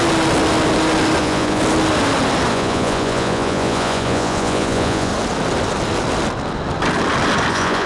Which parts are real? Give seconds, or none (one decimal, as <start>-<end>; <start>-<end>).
0.0-1.2; 1.6-2.5; 5.1-7.5